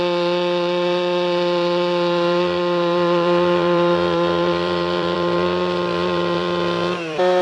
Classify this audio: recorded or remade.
remade